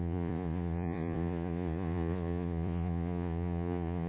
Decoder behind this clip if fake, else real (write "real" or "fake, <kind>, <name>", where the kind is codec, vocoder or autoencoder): fake, vocoder, Vocos